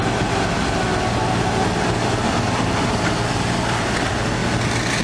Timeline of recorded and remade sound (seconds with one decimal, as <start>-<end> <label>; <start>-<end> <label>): 0.0-5.0 recorded